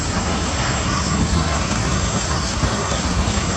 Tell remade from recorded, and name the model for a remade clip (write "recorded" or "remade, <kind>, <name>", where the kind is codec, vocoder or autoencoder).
remade, codec, SNAC